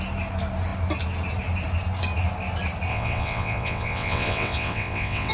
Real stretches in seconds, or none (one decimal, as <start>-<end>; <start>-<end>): 0.0-2.9